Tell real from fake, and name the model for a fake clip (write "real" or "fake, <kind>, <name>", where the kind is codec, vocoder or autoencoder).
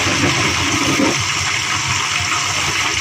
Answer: real